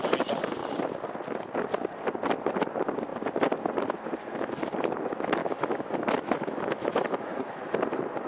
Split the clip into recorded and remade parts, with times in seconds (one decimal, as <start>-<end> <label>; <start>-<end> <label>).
0.0-5.4 recorded; 5.4-7.6 remade; 7.6-8.3 recorded